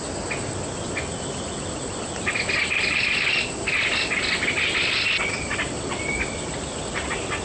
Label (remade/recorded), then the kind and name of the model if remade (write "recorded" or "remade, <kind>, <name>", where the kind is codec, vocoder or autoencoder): recorded